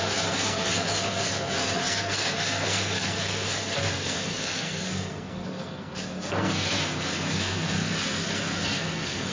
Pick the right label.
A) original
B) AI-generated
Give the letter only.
B